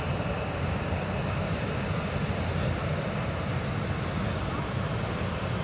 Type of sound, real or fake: real